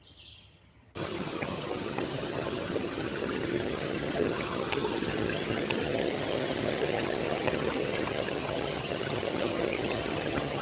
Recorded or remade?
remade